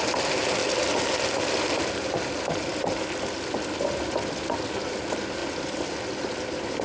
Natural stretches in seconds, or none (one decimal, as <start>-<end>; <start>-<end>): 0.0-6.8